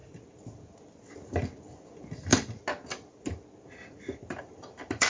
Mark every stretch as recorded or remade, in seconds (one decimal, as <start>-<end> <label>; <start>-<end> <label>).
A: 0.0-2.3 remade; 2.3-4.2 recorded; 4.2-5.1 remade

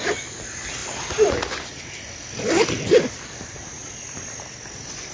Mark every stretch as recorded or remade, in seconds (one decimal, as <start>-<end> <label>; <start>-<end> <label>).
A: 0.0-5.1 recorded

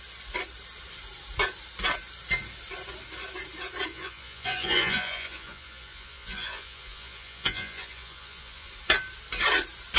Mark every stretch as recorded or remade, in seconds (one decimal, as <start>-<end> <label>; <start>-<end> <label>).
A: 0.0-3.9 recorded; 3.9-8.7 remade; 8.7-10.0 recorded

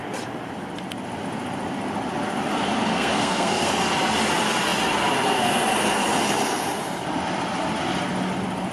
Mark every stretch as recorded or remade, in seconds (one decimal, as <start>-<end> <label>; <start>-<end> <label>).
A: 0.0-2.9 recorded; 2.9-3.7 remade; 3.7-8.7 recorded

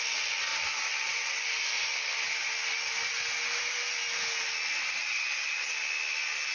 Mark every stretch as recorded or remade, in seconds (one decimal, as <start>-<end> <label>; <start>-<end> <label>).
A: 0.0-6.5 recorded

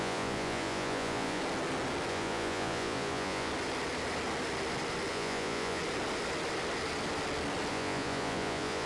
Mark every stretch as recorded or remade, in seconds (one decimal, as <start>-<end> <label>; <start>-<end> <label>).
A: 0.0-1.4 remade; 1.4-2.1 recorded; 2.1-3.5 remade; 3.5-5.1 recorded; 5.1-5.8 remade; 5.8-7.7 recorded; 7.7-8.9 remade

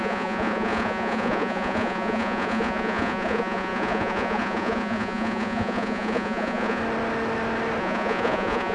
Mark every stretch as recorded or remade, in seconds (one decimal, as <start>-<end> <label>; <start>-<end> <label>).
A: 0.0-6.8 remade; 6.8-7.8 recorded; 7.8-8.7 remade

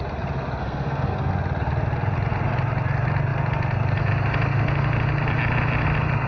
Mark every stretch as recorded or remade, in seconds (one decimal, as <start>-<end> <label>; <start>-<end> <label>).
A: 0.0-0.6 recorded; 0.6-1.3 remade; 1.3-6.3 recorded